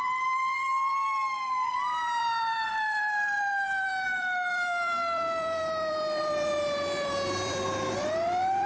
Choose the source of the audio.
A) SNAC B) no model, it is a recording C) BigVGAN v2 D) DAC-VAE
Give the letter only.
C